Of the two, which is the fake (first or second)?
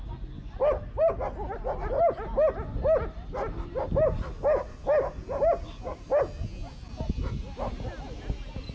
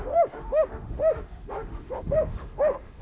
second